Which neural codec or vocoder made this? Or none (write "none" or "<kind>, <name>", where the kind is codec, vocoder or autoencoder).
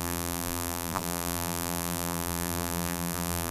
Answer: vocoder, BigVGAN v2